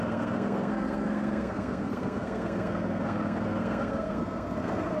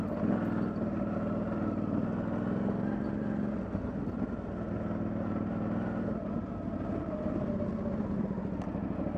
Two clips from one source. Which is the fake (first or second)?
first